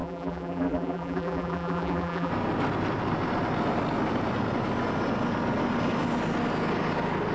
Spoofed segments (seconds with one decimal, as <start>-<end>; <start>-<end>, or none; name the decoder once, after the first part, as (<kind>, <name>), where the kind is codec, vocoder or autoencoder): 0.0-2.3 (vocoder, BigVGAN v2)